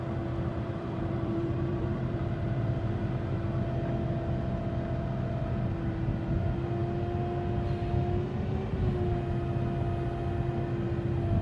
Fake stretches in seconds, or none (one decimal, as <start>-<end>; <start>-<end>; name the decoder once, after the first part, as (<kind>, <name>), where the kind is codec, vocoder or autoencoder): 0.5-3.4 (vocoder, BigVGAN v2)